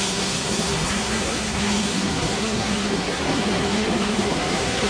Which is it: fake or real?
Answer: fake